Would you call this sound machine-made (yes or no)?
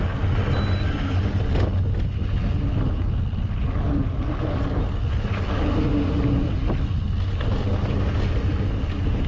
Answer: no